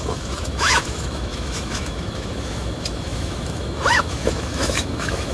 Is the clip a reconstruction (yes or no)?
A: yes